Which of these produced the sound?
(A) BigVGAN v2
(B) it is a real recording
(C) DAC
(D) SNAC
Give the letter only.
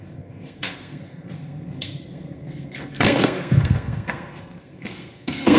D